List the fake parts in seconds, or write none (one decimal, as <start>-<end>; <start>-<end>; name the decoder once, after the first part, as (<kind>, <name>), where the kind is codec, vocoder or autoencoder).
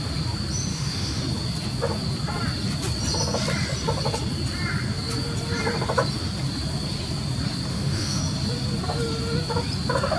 0.7-1.2 (autoencoder, DAC-VAE); 7.7-8.2